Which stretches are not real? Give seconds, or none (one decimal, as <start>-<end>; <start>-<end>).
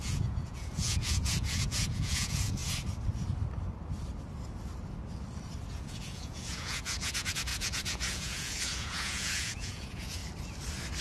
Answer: 0.0-2.6; 5.7-10.2